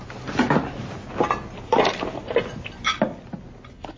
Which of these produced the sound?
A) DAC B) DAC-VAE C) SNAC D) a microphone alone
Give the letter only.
D